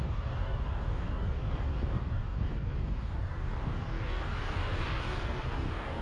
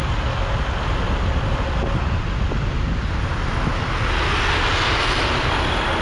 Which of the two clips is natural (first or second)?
second